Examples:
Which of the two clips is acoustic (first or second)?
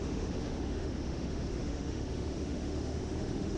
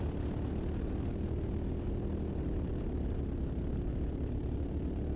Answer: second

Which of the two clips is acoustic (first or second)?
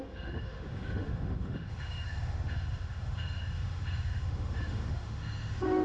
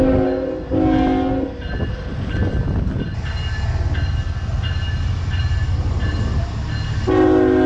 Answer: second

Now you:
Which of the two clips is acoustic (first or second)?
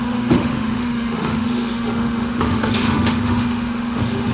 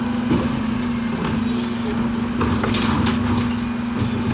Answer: second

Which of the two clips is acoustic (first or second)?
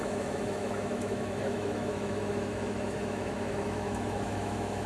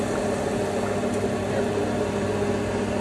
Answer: second